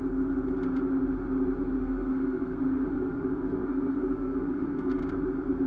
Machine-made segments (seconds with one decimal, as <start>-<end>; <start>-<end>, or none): 1.8-5.0